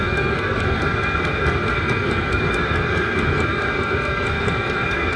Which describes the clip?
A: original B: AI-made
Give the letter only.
B